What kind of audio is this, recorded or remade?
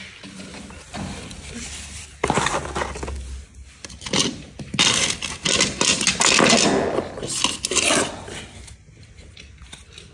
recorded